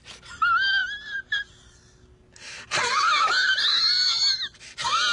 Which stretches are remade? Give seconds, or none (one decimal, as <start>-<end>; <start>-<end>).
none